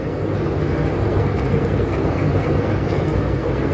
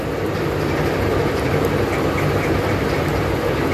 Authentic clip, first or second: second